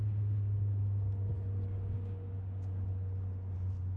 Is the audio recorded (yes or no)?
yes